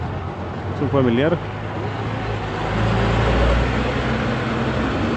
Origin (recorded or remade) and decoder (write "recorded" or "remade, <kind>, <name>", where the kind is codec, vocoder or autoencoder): recorded